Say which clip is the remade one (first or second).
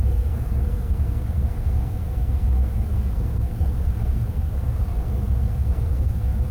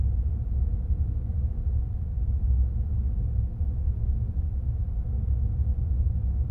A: first